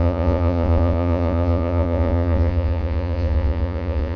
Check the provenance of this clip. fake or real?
fake